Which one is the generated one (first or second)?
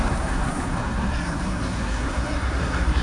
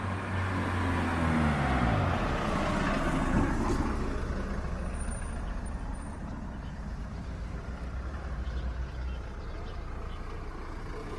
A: first